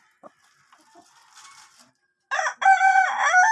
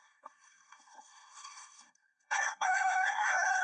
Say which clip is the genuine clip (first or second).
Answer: first